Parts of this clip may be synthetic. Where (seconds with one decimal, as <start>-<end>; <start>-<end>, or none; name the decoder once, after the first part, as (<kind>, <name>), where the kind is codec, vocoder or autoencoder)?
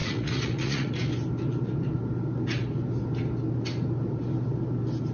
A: 0.0-0.9 (vocoder, Vocos)